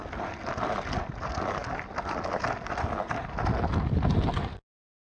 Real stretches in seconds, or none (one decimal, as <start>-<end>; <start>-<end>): 0.0-5.2